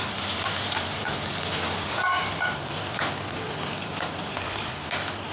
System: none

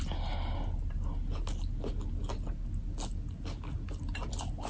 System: none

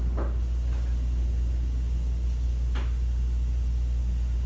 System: none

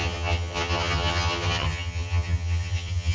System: vocoder, HiFi-GAN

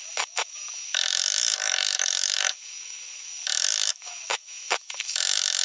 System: autoencoder, DAC-VAE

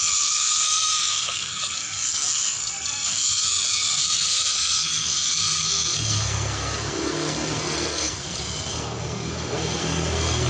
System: codec, SNAC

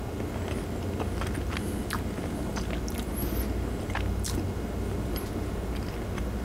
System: none